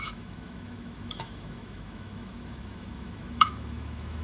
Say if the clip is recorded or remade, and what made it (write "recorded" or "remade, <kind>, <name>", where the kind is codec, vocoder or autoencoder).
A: remade, autoencoder, DAC-VAE